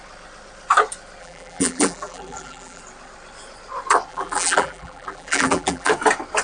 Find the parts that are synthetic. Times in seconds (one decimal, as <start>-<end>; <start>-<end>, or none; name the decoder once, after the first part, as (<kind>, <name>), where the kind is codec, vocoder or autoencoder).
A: 1.2-2.8 (vocoder, BigVGAN v2); 4.1-5.9